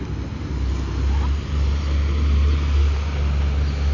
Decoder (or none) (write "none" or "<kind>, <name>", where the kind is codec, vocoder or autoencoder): none